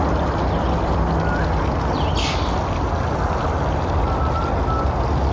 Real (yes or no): yes